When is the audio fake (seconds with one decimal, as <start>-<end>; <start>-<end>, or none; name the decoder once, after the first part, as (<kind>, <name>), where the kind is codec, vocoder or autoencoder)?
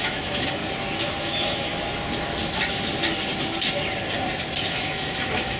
0.0-0.6 (autoencoder, DAC-VAE); 1.2-1.7; 4.7-5.6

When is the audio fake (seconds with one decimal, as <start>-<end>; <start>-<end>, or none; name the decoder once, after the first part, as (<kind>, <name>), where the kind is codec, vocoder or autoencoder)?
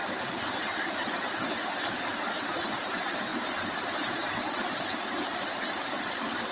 none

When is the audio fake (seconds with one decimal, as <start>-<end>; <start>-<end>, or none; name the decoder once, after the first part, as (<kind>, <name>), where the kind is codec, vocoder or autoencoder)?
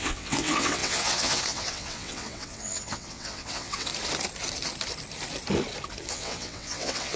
0.0-3.9 (vocoder, WaveNeXt); 6.1-7.2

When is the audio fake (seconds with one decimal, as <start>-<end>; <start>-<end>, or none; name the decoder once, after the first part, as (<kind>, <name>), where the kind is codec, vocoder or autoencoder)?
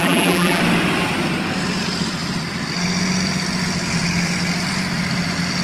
0.0-0.6 (vocoder, BigVGAN v2)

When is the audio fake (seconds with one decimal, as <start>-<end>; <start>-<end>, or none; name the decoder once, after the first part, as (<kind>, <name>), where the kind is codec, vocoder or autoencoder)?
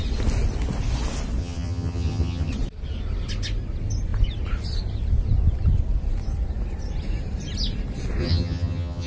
1.4-2.5 (vocoder, HiFi-GAN); 8.2-9.1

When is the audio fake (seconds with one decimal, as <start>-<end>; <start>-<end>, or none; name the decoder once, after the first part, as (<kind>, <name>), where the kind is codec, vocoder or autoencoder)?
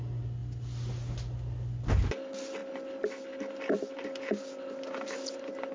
none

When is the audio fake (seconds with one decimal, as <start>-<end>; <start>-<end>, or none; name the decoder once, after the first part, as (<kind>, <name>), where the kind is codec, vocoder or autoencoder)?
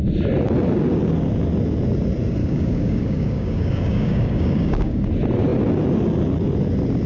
2.4-5.0 (codec, DAC)